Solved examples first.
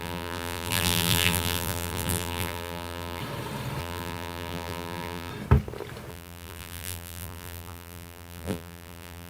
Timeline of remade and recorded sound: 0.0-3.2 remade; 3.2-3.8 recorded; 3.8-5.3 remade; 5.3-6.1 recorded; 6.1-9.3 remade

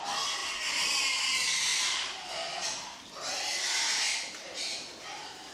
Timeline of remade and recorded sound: 0.0-1.7 recorded; 1.7-3.1 remade; 3.1-4.1 recorded; 4.1-5.5 remade

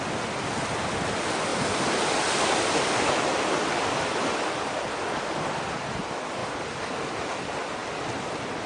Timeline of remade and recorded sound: 0.0-8.7 recorded

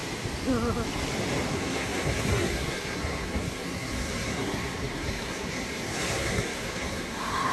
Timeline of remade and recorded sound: 0.0-1.5 recorded; 1.5-7.5 remade

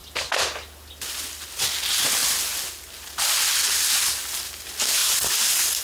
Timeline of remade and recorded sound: 0.0-5.8 recorded

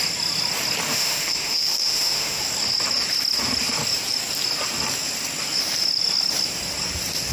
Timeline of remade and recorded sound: 0.0-0.9 recorded; 0.9-2.4 remade; 2.4-7.3 recorded